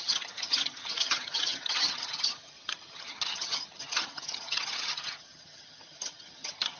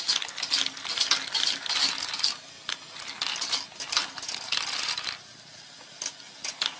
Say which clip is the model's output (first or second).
first